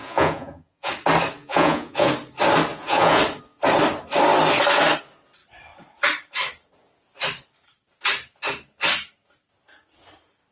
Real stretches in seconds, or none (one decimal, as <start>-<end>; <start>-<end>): 0.9-1.4; 2.1-2.7; 3.2-10.5